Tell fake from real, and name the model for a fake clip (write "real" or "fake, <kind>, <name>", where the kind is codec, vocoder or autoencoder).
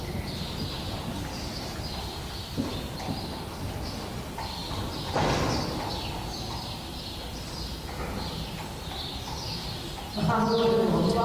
real